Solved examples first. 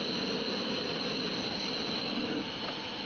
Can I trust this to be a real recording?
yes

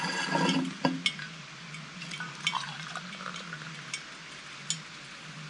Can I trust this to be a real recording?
yes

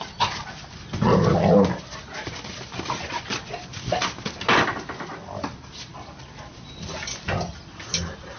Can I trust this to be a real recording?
yes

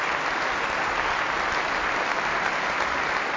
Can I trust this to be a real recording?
yes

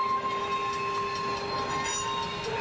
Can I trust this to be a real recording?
yes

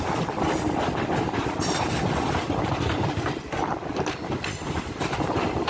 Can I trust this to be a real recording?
yes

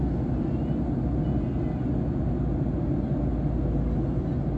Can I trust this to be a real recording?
yes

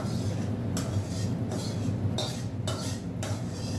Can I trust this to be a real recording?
yes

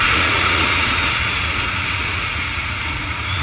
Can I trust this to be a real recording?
no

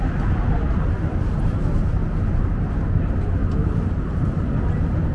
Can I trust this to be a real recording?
yes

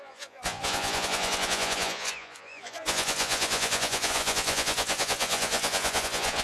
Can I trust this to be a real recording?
no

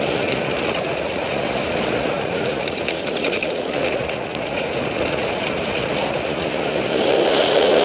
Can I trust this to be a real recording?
no